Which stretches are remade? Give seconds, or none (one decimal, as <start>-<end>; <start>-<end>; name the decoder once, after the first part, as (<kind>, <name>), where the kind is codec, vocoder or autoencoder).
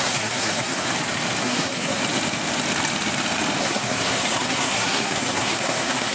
0.0-0.9 (codec, SNAC); 1.4-2.0; 3.6-6.1